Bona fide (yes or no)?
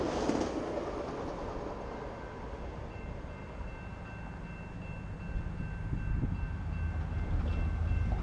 yes